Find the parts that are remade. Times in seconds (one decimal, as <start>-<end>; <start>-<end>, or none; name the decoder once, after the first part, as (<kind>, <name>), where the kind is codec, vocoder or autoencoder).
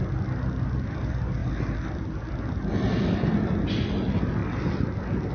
none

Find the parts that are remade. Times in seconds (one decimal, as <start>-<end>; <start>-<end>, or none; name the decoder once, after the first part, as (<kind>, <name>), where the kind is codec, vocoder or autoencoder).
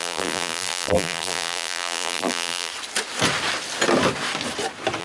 0.0-2.7 (vocoder, BigVGAN v2)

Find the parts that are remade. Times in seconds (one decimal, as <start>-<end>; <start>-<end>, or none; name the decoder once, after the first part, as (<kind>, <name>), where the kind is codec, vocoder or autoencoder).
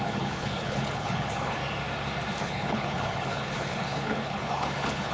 0.0-1.6 (codec, HILCodec); 2.4-5.1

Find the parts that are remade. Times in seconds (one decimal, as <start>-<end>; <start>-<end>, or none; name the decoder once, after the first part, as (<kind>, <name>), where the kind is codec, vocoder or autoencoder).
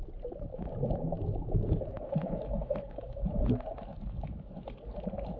0.5-3.4 (autoencoder, DAC-VAE); 3.9-4.5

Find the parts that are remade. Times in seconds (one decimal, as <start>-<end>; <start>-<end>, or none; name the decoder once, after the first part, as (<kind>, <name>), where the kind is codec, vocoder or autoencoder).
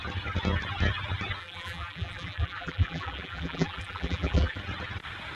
1.4-4.6 (vocoder, BigVGAN v2)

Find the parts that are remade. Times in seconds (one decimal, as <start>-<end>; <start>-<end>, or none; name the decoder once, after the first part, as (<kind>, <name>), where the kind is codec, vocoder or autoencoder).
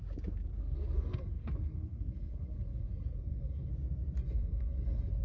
0.6-3.7 (codec, SNAC); 4.2-5.2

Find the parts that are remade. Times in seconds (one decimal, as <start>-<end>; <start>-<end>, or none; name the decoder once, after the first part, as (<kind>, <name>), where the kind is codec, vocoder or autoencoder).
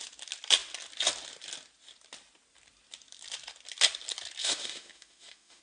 4.4-5.6 (autoencoder, DAC-VAE)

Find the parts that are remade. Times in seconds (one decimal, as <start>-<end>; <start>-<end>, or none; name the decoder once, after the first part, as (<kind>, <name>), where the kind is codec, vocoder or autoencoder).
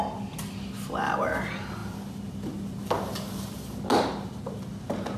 none